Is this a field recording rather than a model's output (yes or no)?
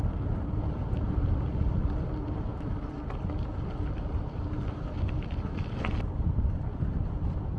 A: yes